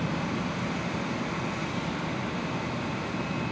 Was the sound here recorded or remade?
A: recorded